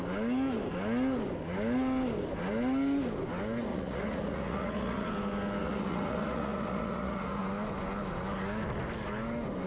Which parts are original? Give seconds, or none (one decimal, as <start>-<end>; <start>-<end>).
0.0-3.7; 5.1-5.6; 7.4-9.7